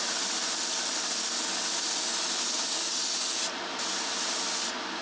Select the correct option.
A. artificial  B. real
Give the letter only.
B